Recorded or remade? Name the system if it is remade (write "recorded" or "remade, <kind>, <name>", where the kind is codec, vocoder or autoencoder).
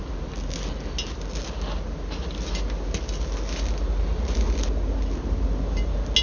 recorded